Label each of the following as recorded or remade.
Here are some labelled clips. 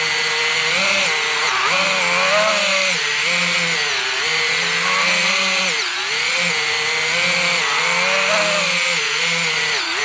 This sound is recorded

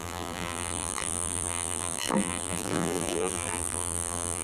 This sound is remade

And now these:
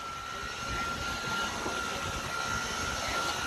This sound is recorded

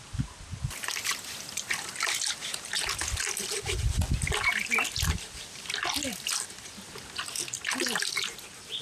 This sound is recorded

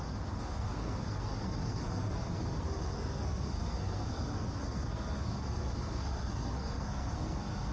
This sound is remade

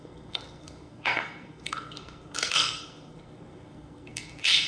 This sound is remade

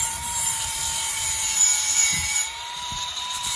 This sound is remade